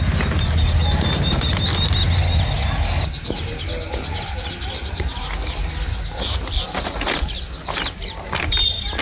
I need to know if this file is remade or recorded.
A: recorded